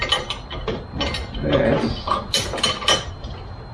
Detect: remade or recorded recorded